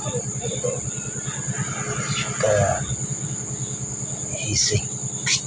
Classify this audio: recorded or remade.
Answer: recorded